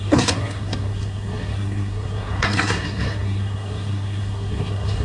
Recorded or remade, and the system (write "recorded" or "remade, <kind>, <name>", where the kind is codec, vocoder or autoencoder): remade, codec, SNAC